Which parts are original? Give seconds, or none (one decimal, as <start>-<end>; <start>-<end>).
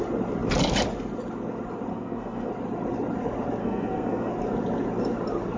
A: 0.0-1.9; 2.5-3.6; 4.3-5.6